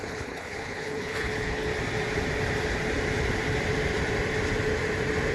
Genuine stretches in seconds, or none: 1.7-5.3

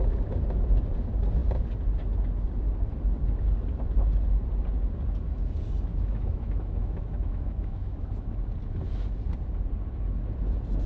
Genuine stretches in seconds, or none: 0.0-5.9; 8.4-10.9

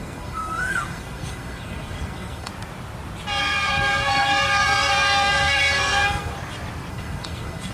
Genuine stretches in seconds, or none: 2.5-3.4; 6.3-6.9

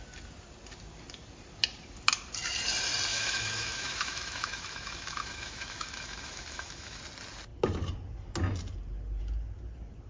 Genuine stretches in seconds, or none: 0.0-3.1; 7.0-10.1

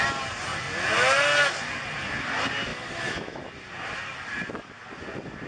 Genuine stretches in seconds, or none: 0.0-2.7; 3.4-5.5

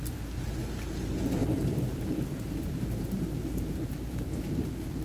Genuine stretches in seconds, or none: 0.0-1.4; 4.4-5.0

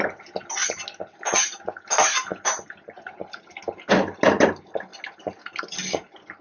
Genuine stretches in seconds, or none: 0.0-6.4

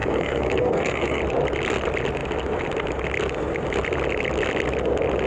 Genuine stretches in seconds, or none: 1.2-5.3